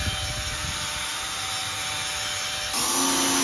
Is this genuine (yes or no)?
yes